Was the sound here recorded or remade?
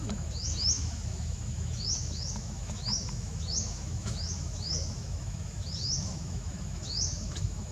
remade